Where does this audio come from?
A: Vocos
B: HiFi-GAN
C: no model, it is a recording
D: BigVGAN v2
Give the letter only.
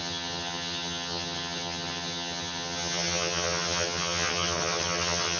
B